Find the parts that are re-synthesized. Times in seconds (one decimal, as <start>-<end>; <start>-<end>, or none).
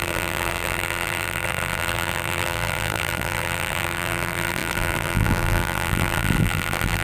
0.0-7.0